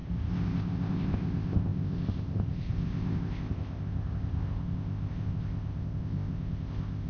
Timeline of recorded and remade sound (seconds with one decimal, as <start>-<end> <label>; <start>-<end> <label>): 0.0-7.1 remade

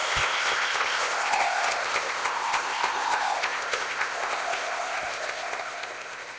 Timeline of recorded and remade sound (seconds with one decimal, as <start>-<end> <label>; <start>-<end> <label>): 0.0-6.4 remade

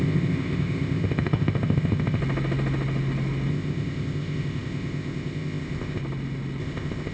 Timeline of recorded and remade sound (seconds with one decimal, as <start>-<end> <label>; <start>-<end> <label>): 0.0-2.2 remade; 2.2-3.5 recorded; 3.5-6.0 remade; 6.0-6.6 recorded; 6.6-7.1 remade

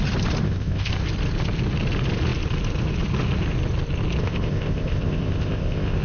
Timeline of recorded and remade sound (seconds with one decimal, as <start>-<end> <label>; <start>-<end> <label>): 0.0-0.4 recorded; 0.4-0.9 remade; 0.9-4.2 recorded; 4.2-6.0 remade

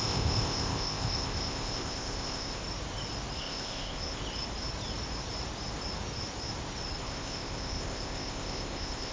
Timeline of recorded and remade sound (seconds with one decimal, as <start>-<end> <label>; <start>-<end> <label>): 0.0-2.6 remade; 2.6-3.4 recorded; 3.4-4.2 remade; 4.2-7.0 recorded; 7.0-9.1 remade

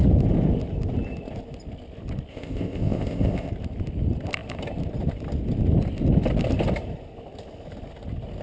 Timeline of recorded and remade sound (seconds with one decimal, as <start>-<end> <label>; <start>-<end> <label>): 0.0-2.3 recorded; 2.3-3.5 remade; 3.5-8.4 recorded

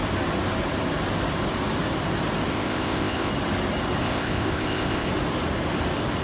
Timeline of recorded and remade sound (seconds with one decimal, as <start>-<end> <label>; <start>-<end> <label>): 0.0-2.5 recorded; 2.5-3.3 remade; 3.3-4.0 recorded; 4.0-5.1 remade; 5.1-6.2 recorded